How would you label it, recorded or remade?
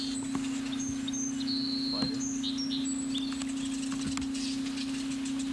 recorded